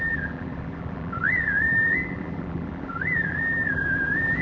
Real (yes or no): no